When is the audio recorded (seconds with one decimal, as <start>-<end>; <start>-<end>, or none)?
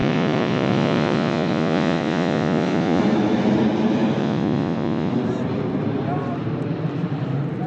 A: 3.0-4.2; 5.1-7.7